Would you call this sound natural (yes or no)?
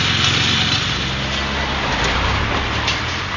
yes